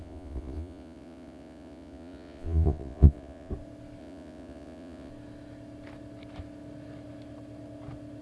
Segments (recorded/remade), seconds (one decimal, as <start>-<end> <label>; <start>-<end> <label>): 0.0-3.5 remade; 3.5-4.0 recorded; 4.0-5.1 remade; 5.1-8.2 recorded